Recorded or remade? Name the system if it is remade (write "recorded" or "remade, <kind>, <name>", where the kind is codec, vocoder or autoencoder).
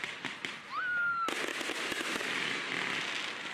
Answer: recorded